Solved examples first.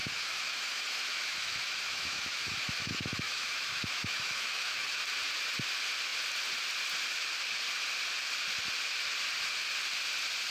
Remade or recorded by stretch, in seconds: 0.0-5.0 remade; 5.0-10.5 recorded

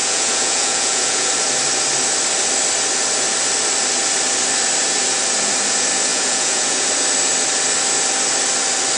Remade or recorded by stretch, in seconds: 0.0-1.3 remade; 1.3-6.1 recorded; 6.1-6.9 remade; 6.9-9.0 recorded

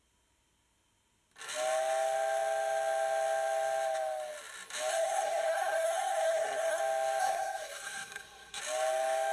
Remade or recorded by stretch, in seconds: 0.0-4.9 recorded; 4.9-6.8 remade; 6.8-7.2 recorded; 7.2-8.6 remade; 8.6-9.3 recorded

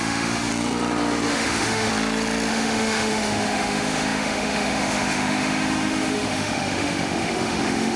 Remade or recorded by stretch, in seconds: 0.0-0.5 remade; 0.5-1.3 recorded; 1.3-1.9 remade; 1.9-2.5 recorded; 2.5-8.0 remade